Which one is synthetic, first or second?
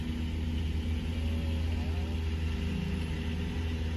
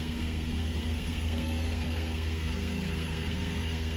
second